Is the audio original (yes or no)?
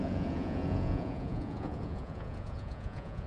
no